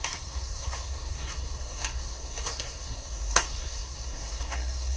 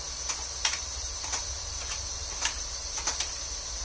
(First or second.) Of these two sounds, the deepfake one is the first